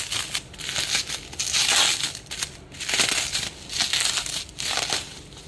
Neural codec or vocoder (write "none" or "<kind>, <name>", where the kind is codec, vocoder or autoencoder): none